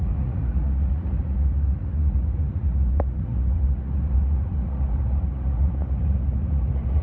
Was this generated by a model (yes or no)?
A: yes